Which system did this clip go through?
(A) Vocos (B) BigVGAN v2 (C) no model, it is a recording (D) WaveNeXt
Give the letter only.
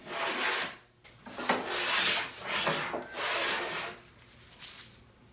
C